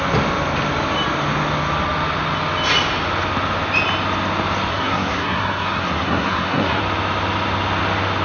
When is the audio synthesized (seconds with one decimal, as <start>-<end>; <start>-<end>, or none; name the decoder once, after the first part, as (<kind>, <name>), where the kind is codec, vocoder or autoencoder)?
4.7-6.8 (codec, SNAC)